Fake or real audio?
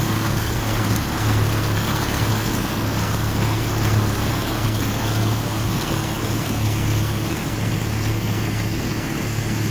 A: fake